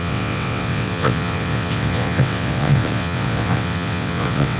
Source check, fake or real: fake